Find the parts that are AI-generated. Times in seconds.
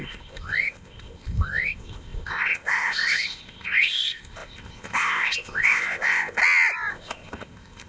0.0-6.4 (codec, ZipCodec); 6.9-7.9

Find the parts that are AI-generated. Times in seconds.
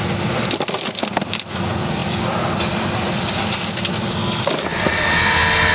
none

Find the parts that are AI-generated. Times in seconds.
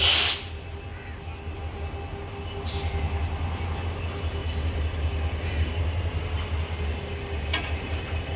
none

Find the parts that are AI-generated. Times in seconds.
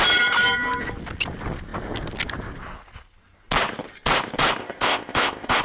4.6-5.6 (codec, ZipCodec)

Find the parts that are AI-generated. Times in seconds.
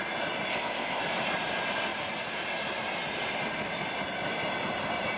0.5-1.0 (codec, ZipCodec)